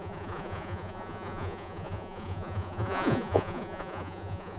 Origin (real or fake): fake